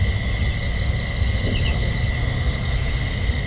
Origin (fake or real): real